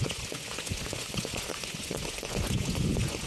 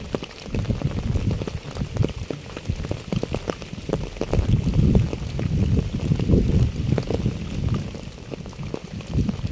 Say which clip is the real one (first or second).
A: second